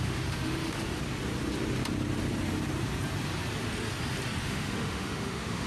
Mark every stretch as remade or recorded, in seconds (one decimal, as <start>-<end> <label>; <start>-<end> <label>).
0.0-1.0 remade; 1.0-4.4 recorded; 4.4-5.7 remade